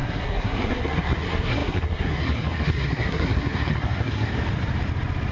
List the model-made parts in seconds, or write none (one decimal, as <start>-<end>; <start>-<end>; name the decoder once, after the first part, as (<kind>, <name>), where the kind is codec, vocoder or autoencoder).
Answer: 0.0-4.3 (codec, SNAC)